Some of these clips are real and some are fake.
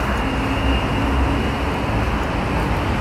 real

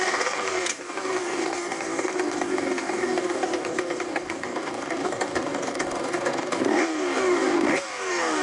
fake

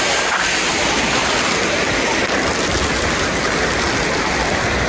real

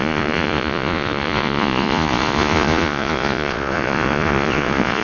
fake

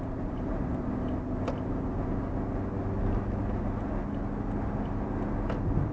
real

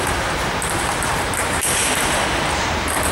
real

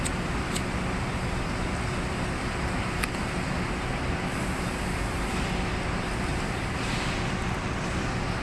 real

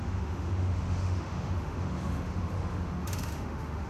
fake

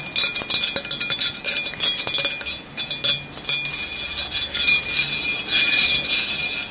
real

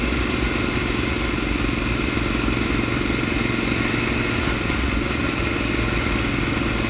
real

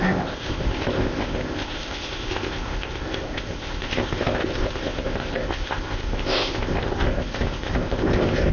fake